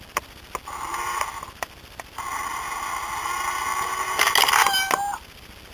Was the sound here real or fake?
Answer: real